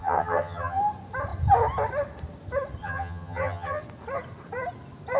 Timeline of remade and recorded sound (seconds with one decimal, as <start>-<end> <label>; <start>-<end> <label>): 0.0-0.8 remade; 0.8-2.8 recorded; 2.8-3.8 remade; 3.8-5.2 recorded